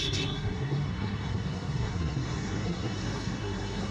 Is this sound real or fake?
fake